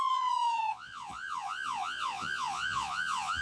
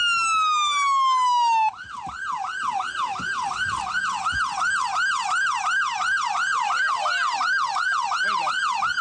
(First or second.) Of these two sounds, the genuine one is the second